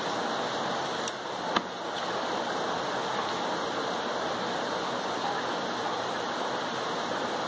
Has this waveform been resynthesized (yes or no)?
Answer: no